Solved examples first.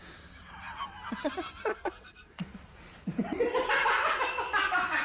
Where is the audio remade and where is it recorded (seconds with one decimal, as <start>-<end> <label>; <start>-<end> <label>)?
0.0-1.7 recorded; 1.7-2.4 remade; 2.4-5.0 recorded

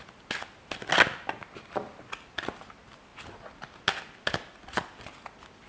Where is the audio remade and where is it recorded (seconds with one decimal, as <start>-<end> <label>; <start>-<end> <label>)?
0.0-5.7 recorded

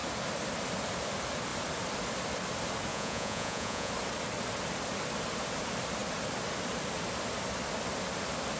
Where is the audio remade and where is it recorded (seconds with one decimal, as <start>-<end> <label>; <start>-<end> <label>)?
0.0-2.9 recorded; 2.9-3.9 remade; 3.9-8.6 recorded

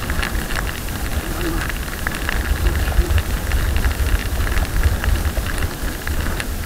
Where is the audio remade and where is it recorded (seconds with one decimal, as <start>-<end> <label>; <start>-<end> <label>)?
0.0-6.7 recorded